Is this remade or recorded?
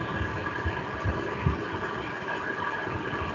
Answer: recorded